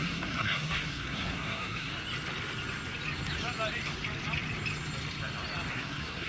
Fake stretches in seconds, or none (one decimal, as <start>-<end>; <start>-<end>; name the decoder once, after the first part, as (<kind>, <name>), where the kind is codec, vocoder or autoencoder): 0.0-1.9 (codec, SNAC); 5.7-6.3